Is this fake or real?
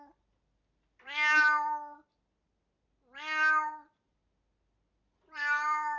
real